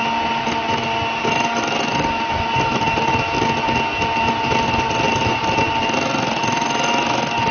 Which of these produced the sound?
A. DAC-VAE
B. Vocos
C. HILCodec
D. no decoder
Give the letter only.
D